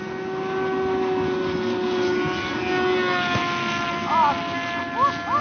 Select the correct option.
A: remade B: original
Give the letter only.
B